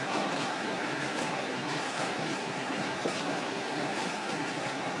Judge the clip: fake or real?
fake